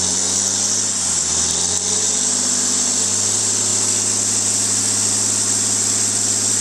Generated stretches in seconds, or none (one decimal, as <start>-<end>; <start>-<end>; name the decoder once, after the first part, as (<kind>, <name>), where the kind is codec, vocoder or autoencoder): none